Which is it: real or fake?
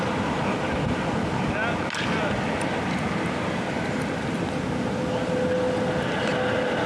real